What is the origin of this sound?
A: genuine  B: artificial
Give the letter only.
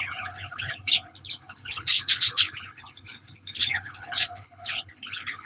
B